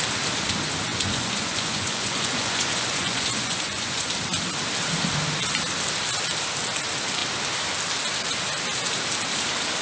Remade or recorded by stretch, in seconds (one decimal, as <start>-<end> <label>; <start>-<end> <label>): 0.0-0.9 recorded; 0.9-4.1 remade; 4.1-9.8 recorded